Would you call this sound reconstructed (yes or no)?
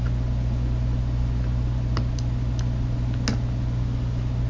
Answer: no